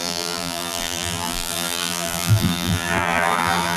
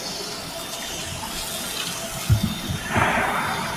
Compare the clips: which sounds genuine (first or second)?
second